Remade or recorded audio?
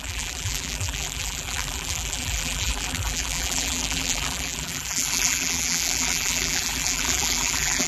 remade